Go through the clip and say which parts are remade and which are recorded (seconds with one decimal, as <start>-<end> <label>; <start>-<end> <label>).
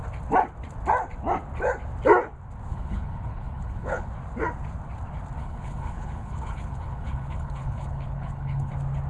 0.0-2.7 recorded; 2.7-4.1 remade; 4.1-5.4 recorded; 5.4-8.7 remade; 8.7-9.1 recorded